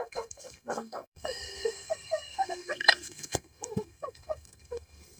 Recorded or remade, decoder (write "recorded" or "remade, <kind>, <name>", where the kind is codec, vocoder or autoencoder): remade, codec, SNAC